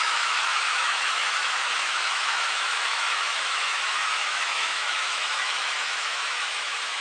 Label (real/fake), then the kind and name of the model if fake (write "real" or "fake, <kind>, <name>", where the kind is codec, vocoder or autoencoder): fake, autoencoder, DAC-VAE